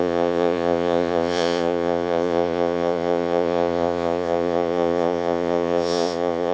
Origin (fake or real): fake